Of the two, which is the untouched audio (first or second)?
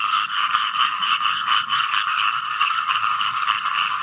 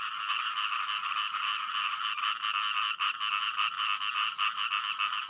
second